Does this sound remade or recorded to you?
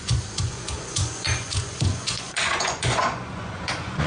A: remade